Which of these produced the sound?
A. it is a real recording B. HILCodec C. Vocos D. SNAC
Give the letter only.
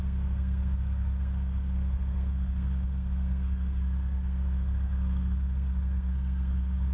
D